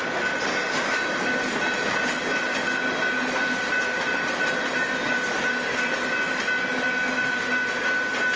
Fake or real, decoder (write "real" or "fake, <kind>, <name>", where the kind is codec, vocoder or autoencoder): real